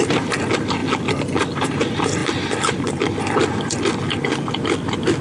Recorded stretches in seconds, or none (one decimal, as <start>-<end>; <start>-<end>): 0.0-5.2